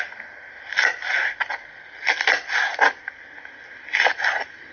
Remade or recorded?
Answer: recorded